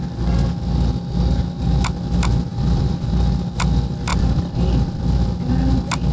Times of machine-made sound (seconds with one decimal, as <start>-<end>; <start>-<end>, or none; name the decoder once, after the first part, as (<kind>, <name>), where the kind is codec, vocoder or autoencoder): 2.5-3.6 (vocoder, BigVGAN v2); 4.1-5.0